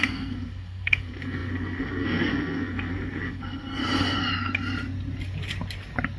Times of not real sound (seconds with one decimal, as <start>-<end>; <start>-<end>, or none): 0.0-3.8